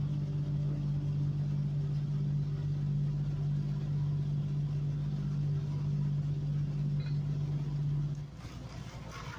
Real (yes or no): yes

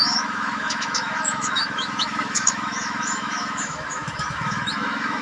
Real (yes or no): no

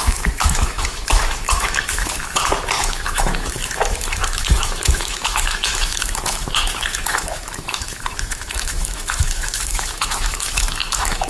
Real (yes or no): no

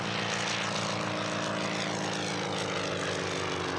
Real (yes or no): yes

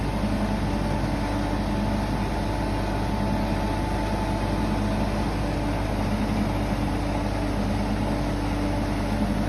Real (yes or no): yes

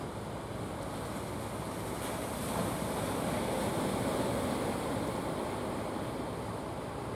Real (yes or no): yes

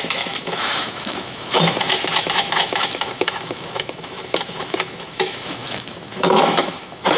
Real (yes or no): no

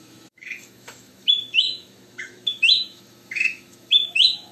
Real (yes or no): no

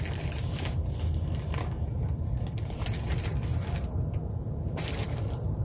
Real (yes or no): yes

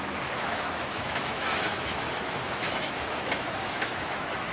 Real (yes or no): no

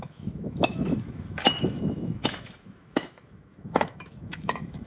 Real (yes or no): no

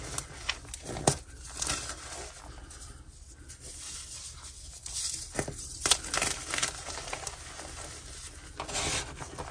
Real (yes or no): yes